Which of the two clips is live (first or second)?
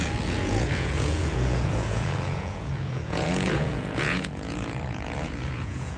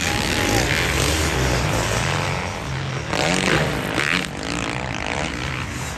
second